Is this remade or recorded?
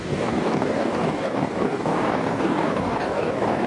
remade